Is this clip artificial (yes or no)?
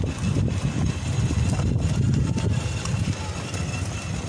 no